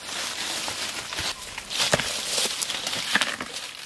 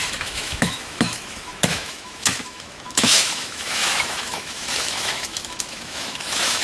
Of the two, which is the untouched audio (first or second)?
first